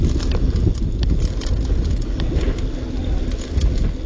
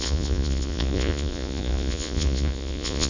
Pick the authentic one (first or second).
first